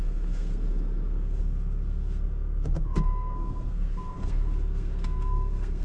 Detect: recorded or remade remade